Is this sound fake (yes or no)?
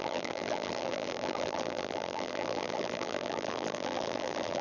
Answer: yes